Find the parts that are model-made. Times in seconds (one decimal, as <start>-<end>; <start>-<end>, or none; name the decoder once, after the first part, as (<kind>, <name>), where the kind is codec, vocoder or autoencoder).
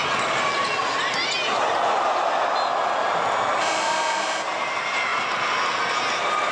none